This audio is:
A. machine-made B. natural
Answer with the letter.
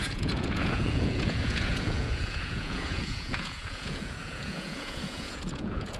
A